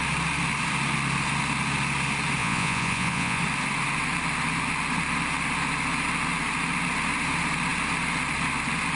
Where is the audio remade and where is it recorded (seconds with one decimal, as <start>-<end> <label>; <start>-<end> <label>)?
0.0-2.4 recorded; 2.4-3.4 remade; 3.4-9.0 recorded